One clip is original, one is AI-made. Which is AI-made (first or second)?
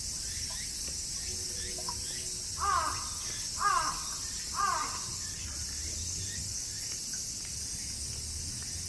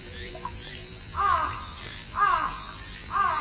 second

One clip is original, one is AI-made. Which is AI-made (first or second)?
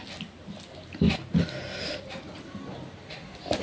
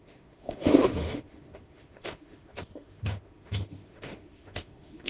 second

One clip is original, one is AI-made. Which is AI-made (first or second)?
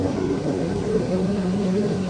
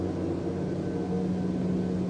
first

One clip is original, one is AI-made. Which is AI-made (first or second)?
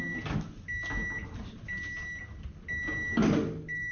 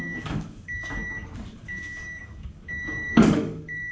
second